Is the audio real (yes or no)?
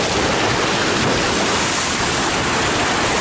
no